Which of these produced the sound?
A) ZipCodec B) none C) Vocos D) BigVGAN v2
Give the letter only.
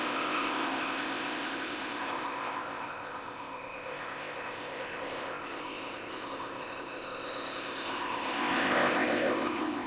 A